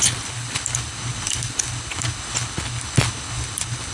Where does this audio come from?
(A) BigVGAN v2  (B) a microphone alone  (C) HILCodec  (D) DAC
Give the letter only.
C